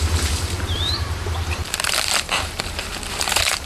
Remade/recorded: remade